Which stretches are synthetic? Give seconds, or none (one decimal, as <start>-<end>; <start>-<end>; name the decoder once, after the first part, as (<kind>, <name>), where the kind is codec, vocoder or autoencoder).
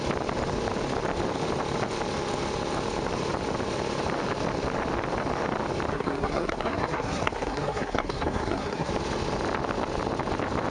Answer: 5.9-8.9 (codec, SNAC)